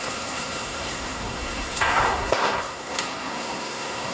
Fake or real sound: fake